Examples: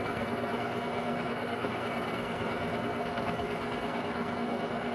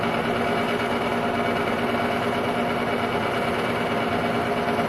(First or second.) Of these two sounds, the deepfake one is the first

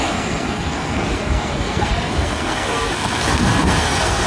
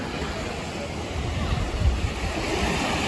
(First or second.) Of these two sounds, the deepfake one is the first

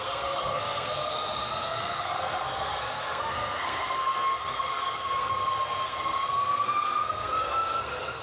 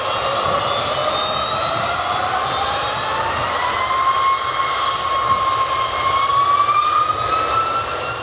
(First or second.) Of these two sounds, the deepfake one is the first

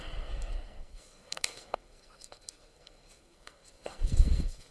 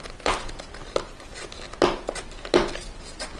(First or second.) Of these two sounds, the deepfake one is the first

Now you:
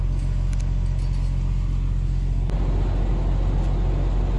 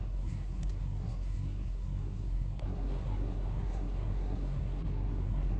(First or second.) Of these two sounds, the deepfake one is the second